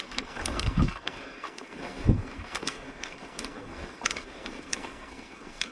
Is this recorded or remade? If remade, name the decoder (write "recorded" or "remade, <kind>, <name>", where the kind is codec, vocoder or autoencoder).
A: remade, codec, SNAC